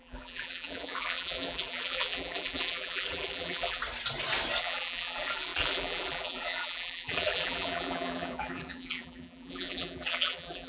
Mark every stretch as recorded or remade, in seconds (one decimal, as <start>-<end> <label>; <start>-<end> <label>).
0.0-3.8 remade; 3.8-4.6 recorded; 4.6-10.7 remade